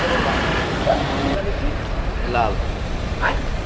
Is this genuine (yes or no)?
no